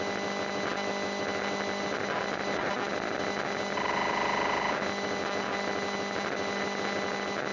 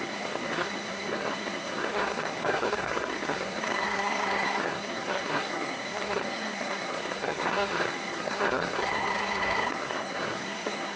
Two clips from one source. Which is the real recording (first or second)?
first